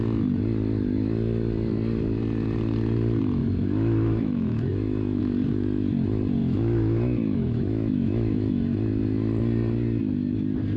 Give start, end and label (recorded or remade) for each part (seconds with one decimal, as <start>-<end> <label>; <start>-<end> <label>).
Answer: 0.0-3.4 recorded; 3.4-5.2 remade; 5.2-6.4 recorded; 6.4-8.5 remade; 8.5-10.8 recorded